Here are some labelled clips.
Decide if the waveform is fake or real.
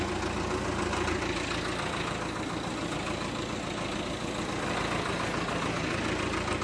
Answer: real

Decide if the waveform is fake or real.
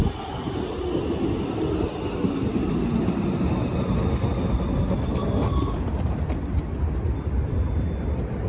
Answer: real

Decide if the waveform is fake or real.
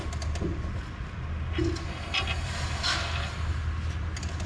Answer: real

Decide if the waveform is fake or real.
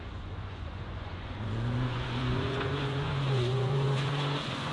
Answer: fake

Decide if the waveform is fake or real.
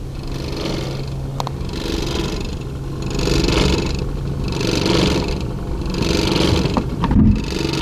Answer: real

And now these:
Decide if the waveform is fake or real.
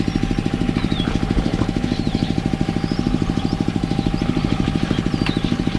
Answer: real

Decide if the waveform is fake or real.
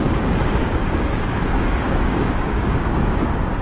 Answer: fake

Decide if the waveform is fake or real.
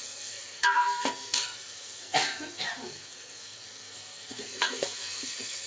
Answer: fake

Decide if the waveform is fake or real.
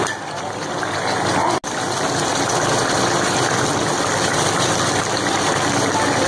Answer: real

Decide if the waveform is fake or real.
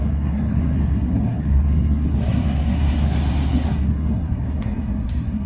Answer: fake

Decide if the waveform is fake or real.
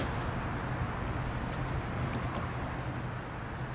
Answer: real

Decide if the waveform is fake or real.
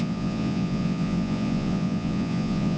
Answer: fake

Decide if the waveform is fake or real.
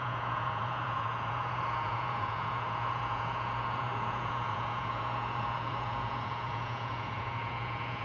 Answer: fake